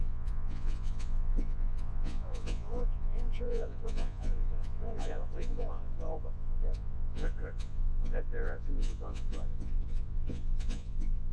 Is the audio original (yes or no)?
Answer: no